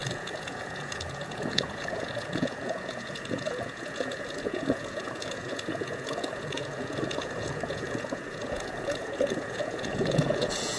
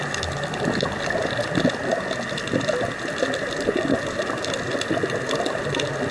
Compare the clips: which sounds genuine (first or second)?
second